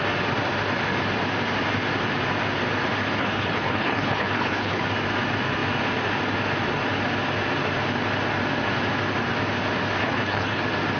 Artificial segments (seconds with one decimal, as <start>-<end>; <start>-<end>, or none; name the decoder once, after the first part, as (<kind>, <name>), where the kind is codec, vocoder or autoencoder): 3.2-4.8 (codec, HILCodec); 10.0-10.6